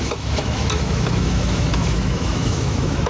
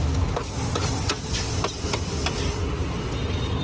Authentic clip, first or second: second